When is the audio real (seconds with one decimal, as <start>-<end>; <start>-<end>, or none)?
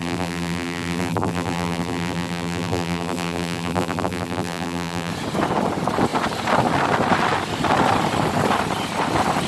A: 5.1-9.5